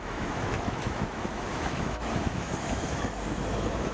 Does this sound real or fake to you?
fake